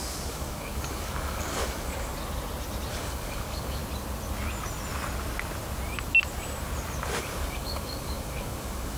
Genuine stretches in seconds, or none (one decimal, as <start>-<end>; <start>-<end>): 2.1-2.9; 3.8-7.2